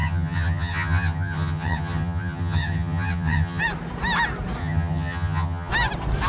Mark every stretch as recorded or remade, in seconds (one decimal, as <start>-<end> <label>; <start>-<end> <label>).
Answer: 0.0-3.6 remade; 3.6-4.6 recorded; 4.6-5.7 remade; 5.7-6.3 recorded